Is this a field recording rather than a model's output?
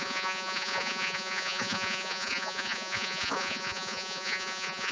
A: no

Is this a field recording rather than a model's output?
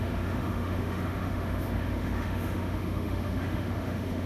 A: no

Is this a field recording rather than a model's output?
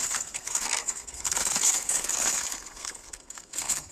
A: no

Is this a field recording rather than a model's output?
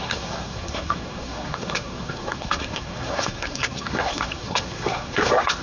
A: no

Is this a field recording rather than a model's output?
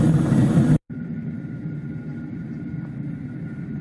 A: no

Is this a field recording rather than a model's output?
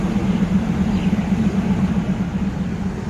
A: yes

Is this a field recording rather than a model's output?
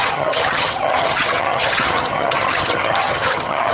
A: no